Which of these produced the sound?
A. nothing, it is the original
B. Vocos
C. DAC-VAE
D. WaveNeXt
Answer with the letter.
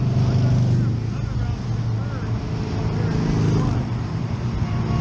A